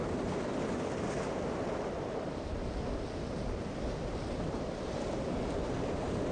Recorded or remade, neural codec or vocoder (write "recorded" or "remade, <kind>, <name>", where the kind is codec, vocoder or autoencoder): recorded